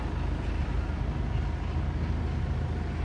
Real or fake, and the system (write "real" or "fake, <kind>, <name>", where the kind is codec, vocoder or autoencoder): real